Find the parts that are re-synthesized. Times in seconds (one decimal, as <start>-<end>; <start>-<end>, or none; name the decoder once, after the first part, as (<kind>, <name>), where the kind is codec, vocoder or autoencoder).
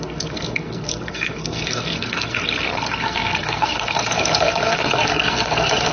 0.0-2.4 (codec, SNAC); 3.0-5.9